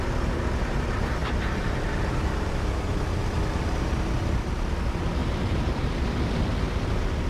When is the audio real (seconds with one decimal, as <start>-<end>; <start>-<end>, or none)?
0.0-1.2; 2.5-3.2; 4.1-5.2; 6.0-7.3